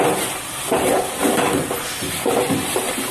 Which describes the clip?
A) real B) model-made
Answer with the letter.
A